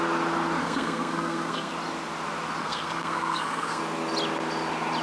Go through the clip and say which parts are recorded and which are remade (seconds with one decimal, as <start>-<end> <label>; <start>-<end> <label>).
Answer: 0.0-0.6 recorded; 0.6-1.7 remade; 1.7-2.6 recorded; 2.6-3.8 remade; 3.8-5.0 recorded